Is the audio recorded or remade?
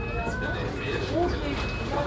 recorded